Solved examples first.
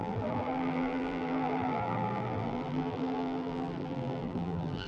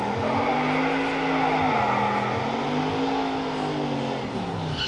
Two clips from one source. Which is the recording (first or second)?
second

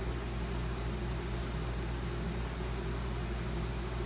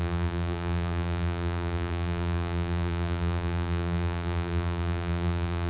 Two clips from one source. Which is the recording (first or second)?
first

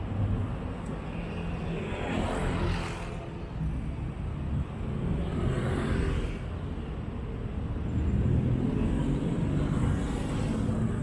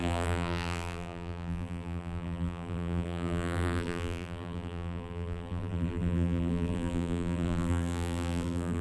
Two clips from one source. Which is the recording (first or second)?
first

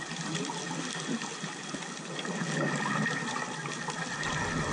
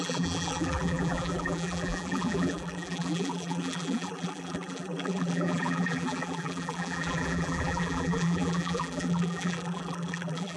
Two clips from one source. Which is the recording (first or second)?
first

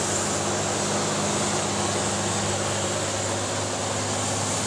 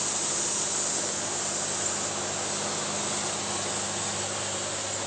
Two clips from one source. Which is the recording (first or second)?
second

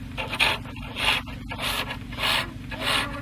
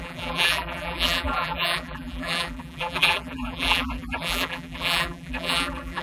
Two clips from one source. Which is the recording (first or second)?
first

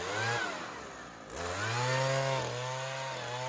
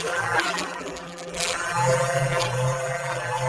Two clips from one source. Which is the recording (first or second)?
first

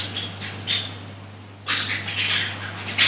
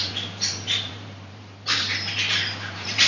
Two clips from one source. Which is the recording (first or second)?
first